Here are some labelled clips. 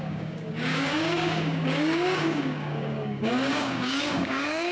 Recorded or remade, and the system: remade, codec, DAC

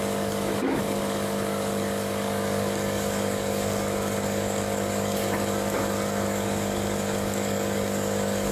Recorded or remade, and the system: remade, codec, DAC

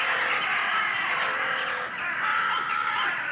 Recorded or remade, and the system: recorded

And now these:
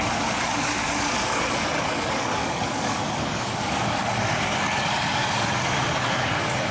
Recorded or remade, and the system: remade, codec, DAC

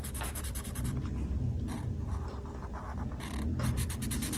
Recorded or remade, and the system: recorded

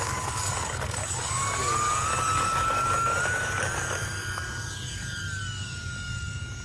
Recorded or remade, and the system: remade, codec, DAC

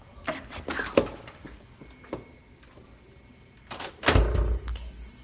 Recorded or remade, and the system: recorded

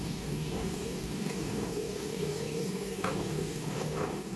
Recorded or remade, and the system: remade, codec, DAC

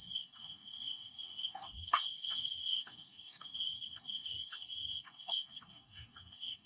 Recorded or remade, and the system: remade, codec, DAC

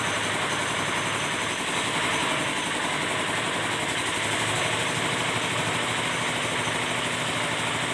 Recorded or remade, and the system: recorded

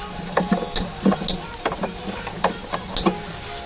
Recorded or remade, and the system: recorded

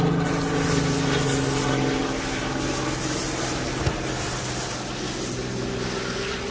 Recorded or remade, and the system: recorded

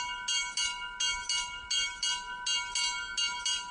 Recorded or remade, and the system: recorded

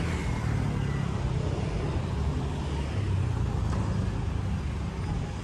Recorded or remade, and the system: recorded